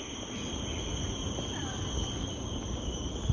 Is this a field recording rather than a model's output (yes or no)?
yes